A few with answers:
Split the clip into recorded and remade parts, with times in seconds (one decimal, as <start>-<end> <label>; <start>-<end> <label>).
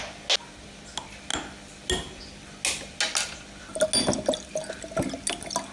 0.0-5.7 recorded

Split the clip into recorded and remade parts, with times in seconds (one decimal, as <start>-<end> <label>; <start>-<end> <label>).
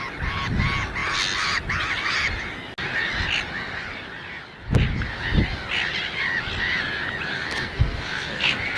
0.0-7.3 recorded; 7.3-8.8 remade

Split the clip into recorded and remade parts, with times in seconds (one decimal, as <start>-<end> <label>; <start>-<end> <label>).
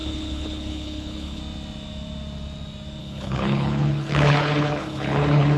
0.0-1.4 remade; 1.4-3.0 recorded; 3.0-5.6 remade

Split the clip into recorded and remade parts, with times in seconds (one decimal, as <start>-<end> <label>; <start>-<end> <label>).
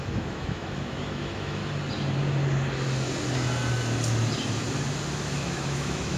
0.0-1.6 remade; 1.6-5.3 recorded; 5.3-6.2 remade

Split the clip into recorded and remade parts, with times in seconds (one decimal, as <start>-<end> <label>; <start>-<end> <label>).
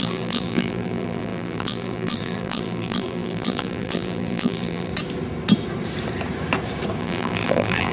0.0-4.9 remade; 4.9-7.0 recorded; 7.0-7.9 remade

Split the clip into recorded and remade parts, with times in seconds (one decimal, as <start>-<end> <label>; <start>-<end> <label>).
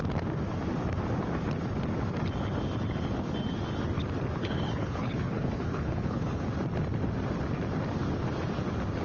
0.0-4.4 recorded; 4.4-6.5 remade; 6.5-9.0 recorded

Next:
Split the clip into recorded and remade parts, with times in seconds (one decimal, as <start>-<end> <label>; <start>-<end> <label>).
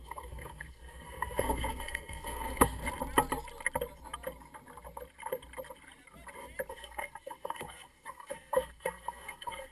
0.0-2.8 remade; 2.8-6.7 recorded; 6.7-9.7 remade